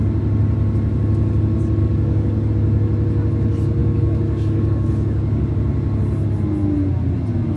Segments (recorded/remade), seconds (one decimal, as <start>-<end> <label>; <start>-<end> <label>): 0.0-1.8 recorded; 1.8-2.5 remade; 2.5-3.8 recorded; 3.8-5.4 remade; 5.4-7.6 recorded